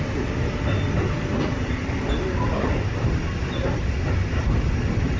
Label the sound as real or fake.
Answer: real